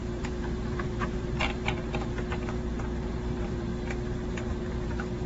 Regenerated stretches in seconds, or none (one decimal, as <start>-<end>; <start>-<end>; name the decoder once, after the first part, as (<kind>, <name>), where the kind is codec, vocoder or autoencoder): 0.0-3.7 (vocoder, BigVGAN v2); 4.3-5.3